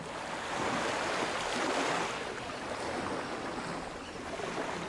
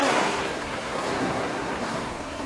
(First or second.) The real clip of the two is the first